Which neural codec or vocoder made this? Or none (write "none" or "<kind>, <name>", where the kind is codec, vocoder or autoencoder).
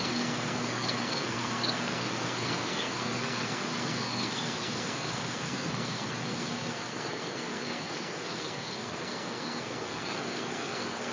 codec, SNAC